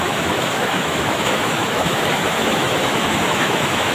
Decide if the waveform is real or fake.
fake